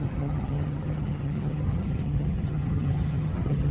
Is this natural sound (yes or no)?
no